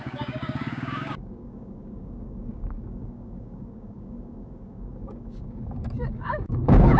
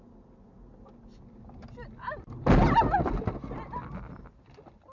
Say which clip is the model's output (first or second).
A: first